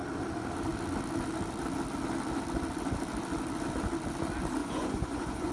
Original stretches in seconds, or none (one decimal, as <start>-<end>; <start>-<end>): 0.0-4.6